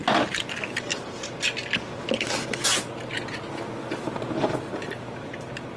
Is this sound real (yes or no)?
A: yes